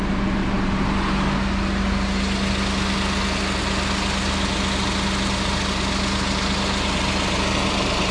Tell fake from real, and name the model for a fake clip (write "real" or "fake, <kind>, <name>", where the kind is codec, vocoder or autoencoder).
real